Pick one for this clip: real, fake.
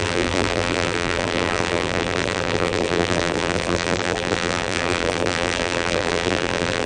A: fake